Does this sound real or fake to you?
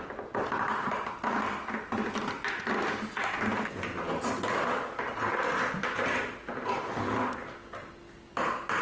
real